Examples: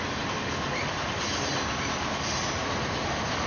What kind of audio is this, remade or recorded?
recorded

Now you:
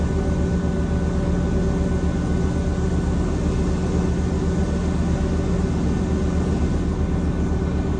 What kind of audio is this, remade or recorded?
recorded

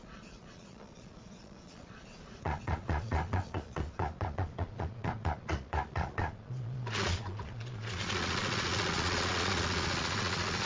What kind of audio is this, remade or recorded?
remade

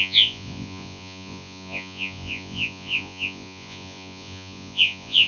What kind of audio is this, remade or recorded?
remade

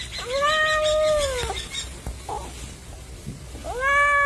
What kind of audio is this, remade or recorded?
recorded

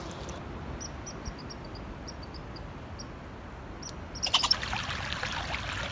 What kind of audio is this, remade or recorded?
recorded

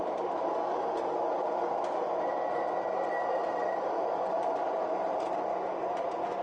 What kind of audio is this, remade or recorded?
recorded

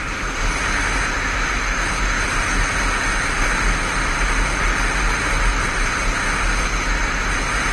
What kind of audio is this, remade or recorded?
recorded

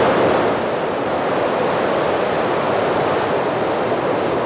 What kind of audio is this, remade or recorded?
recorded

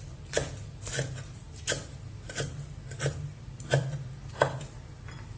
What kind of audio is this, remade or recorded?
recorded